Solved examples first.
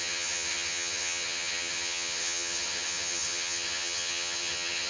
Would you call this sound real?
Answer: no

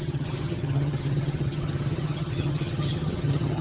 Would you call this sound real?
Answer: no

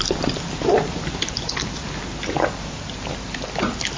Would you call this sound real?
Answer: yes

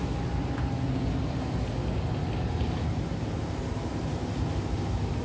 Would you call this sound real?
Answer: yes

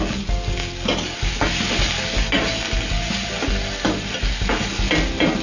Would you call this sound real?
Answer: yes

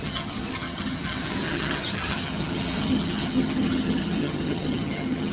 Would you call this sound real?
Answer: no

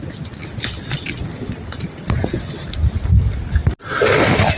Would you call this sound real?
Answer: yes